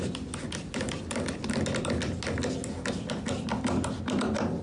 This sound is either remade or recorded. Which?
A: recorded